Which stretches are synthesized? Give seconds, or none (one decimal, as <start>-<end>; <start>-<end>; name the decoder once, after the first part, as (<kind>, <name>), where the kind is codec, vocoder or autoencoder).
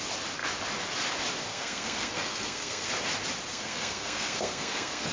1.5-2.9 (codec, SNAC); 3.5-5.1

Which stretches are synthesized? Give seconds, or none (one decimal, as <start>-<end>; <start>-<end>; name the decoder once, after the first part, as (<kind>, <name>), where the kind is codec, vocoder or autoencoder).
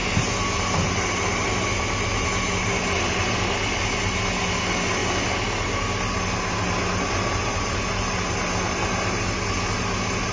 none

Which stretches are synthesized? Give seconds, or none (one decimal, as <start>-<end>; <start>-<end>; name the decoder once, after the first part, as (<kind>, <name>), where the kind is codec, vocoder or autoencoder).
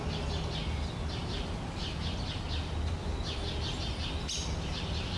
none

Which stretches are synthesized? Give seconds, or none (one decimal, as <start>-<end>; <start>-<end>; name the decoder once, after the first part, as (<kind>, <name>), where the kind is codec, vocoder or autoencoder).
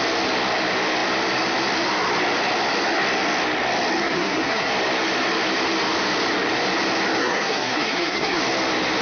4.0-4.7 (codec, SNAC); 7.2-8.4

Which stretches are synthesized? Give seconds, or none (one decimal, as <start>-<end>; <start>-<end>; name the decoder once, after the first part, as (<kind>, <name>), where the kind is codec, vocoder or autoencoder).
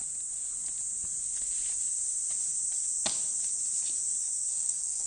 4.5-5.1 (codec, SNAC)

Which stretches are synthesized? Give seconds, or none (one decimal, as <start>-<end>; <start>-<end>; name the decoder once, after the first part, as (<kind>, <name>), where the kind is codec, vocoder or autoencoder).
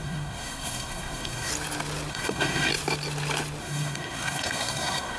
0.0-1.5 (codec, SNAC); 2.1-2.7; 3.6-5.2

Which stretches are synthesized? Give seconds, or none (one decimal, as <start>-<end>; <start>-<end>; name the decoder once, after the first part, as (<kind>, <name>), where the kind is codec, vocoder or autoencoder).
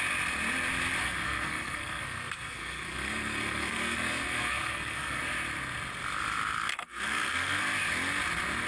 1.0-5.2 (codec, SNAC); 6.7-7.6